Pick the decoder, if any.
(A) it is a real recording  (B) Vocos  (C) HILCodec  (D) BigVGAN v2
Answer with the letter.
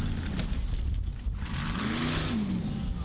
A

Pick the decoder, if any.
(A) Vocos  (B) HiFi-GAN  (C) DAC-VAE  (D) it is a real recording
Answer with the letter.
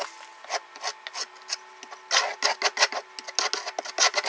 D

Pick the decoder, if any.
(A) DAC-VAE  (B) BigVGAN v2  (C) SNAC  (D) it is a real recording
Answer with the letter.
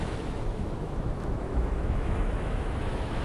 A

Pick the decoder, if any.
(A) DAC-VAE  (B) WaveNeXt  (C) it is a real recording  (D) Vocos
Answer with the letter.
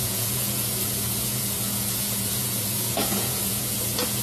D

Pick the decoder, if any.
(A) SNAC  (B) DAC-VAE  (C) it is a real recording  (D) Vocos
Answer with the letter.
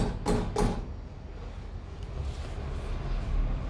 C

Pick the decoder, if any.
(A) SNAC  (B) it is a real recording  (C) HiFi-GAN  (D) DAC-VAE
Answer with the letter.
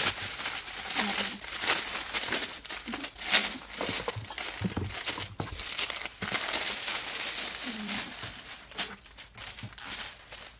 B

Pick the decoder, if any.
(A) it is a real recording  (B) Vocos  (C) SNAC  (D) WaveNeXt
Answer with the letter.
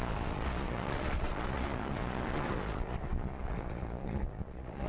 B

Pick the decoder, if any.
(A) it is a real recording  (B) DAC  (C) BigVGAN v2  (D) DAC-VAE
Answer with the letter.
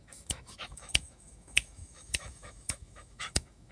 D